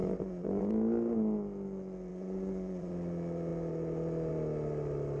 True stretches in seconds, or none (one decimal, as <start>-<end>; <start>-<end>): 0.7-2.1; 2.9-5.2